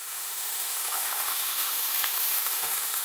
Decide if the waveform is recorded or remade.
remade